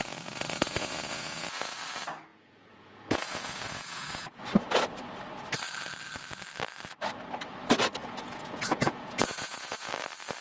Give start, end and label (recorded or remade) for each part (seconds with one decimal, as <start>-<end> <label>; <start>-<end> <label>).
0.0-1.8 remade; 1.8-2.3 recorded; 2.3-4.4 remade; 4.4-8.0 recorded; 8.0-9.9 remade; 9.9-10.4 recorded